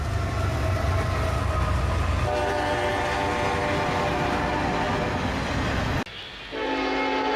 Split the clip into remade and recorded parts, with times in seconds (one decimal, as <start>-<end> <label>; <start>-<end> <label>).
0.0-7.4 recorded